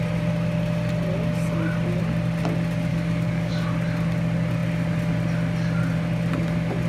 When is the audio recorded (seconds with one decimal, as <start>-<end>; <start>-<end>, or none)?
0.0-2.9; 3.5-6.9